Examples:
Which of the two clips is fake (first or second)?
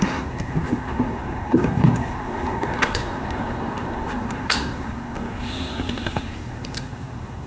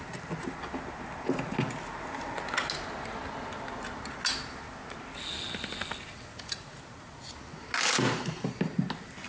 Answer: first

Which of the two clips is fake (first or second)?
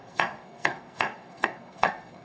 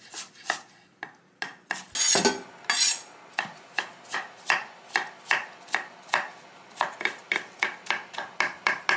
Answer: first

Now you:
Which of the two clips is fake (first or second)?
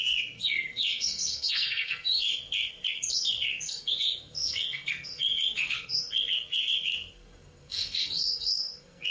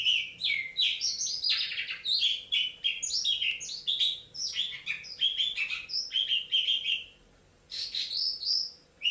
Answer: first